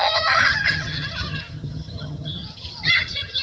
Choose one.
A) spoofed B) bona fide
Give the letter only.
A